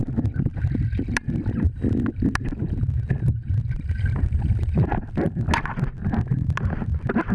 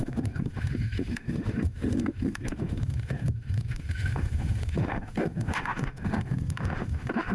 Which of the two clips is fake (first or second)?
second